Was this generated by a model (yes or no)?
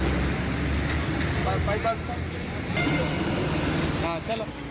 no